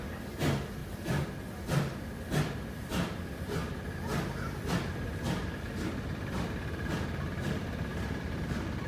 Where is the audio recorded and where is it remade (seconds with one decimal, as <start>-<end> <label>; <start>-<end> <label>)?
0.0-8.9 recorded